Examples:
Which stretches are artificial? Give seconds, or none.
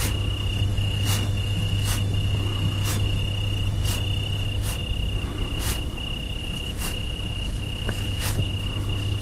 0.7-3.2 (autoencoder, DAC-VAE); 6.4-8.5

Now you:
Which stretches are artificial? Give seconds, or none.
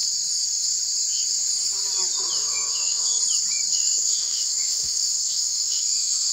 2.4-3.2 (autoencoder, DAC-VAE); 3.7-6.3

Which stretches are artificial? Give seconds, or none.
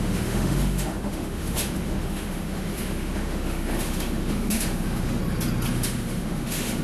0.0-5.2 (autoencoder, DAC-VAE); 5.7-6.8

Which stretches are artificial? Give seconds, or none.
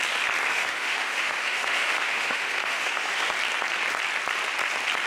0.5-3.3 (autoencoder, DAC-VAE)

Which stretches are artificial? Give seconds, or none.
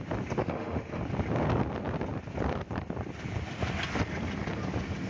0.4-1.0 (autoencoder, DAC-VAE)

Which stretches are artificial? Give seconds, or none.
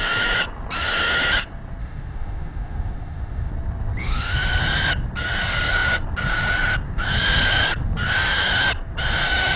1.8-3.5 (autoencoder, DAC-VAE); 4.0-4.6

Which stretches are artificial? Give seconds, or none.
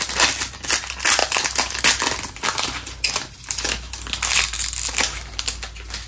none